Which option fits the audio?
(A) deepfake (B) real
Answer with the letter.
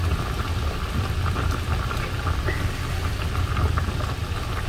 B